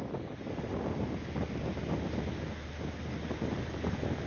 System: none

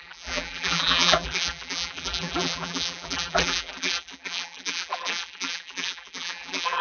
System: vocoder, BigVGAN v2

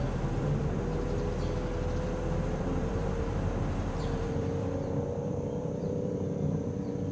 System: vocoder, BigVGAN v2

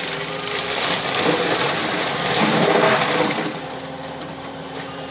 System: vocoder, BigVGAN v2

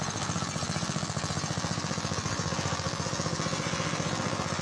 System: vocoder, BigVGAN v2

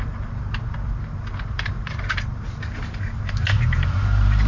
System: vocoder, BigVGAN v2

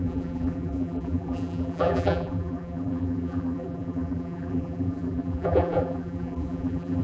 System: vocoder, BigVGAN v2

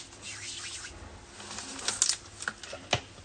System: none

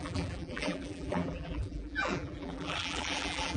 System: vocoder, BigVGAN v2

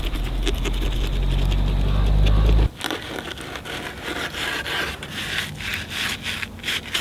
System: none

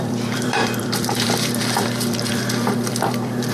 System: vocoder, BigVGAN v2